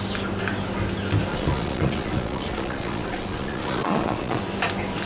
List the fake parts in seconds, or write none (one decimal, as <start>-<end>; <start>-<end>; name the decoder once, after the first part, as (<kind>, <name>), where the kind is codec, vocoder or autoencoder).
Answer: 1.3-4.4 (vocoder, Vocos)